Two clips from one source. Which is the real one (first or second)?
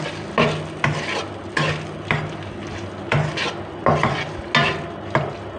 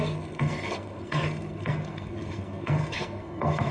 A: first